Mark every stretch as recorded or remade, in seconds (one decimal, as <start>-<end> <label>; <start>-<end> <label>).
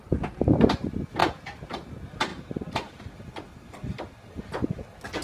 0.0-1.2 recorded; 1.2-1.9 remade; 1.9-2.3 recorded; 2.3-4.2 remade; 4.2-5.2 recorded